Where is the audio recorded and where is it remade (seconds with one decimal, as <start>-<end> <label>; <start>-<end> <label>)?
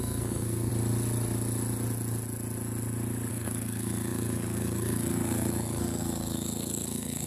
0.0-0.7 remade; 0.7-3.3 recorded; 3.3-7.3 remade